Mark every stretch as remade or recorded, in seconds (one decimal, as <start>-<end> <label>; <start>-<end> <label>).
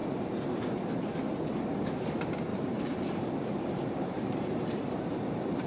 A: 0.0-2.5 recorded; 2.5-5.7 remade